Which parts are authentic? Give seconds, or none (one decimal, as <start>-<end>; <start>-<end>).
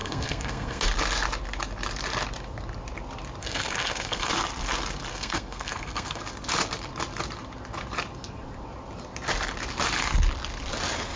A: 0.8-3.4; 4.3-5.1; 6.2-11.2